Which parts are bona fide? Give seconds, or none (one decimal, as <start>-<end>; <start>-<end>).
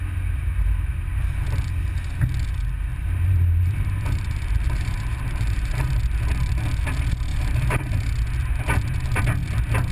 0.0-2.9; 6.0-7.3; 8.1-9.9